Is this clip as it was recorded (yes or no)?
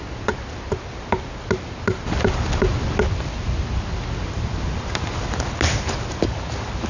yes